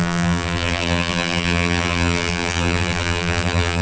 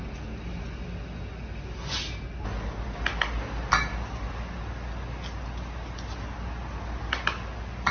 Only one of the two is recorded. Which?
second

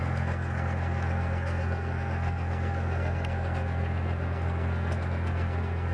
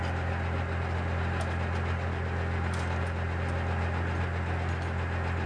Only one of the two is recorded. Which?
second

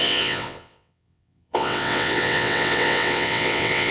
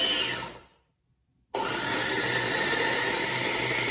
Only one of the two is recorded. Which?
second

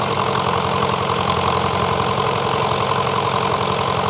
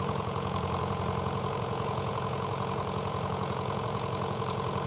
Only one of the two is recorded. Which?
first